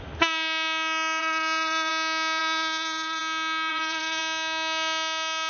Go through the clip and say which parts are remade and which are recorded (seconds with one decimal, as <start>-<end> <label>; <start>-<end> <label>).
0.0-1.2 recorded; 1.2-1.9 remade; 1.9-2.4 recorded; 2.4-3.2 remade; 3.2-3.7 recorded; 3.7-4.2 remade; 4.2-5.5 recorded